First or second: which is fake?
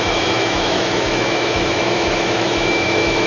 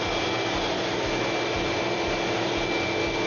first